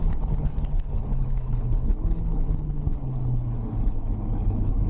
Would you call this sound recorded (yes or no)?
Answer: no